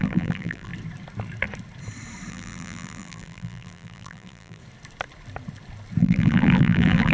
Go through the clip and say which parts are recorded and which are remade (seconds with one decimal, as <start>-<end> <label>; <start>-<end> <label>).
0.0-0.7 remade; 0.7-2.3 recorded; 2.3-4.6 remade; 4.6-6.0 recorded; 6.0-7.1 remade